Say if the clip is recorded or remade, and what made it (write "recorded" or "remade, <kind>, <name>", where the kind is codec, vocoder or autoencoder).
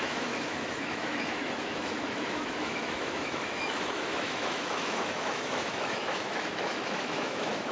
remade, autoencoder, DAC-VAE